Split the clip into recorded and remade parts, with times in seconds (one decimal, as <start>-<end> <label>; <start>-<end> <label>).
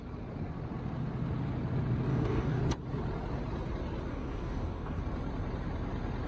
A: 0.0-2.1 recorded; 2.1-2.6 remade; 2.6-4.1 recorded; 4.1-5.0 remade; 5.0-6.3 recorded